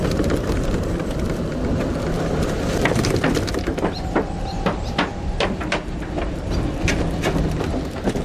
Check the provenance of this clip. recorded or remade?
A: recorded